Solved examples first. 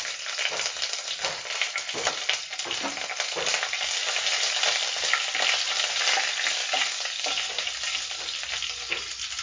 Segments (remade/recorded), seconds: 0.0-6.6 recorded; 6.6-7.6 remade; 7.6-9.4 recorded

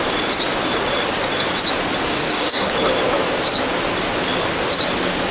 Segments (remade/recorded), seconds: 0.0-2.1 recorded; 2.1-2.7 remade; 2.7-5.3 recorded

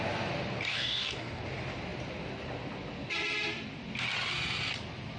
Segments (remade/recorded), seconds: 0.0-0.7 recorded; 0.7-1.4 remade; 1.4-5.2 recorded